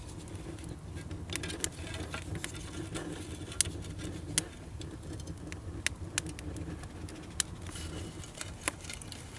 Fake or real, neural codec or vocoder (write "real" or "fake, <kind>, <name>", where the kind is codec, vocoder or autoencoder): real